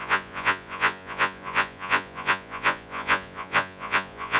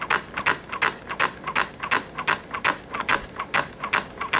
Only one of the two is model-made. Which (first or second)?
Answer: first